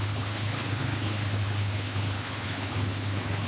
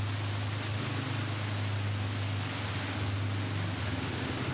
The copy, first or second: first